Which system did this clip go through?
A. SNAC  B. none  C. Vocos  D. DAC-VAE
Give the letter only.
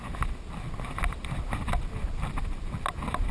B